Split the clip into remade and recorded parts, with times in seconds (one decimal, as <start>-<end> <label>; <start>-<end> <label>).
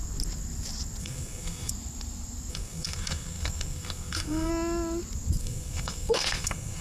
0.0-1.0 recorded; 1.0-1.7 remade; 1.7-2.5 recorded; 2.5-4.5 remade; 4.5-5.4 recorded; 5.4-6.8 remade